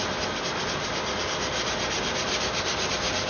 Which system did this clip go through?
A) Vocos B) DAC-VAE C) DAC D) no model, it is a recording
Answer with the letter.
D